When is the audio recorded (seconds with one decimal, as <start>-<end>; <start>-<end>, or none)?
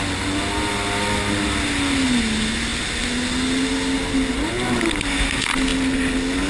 0.0-6.5